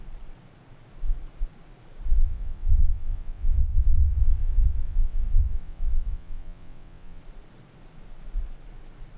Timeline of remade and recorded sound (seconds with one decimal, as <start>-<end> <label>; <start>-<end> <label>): 0.0-2.1 recorded; 2.1-7.2 remade; 7.2-9.2 recorded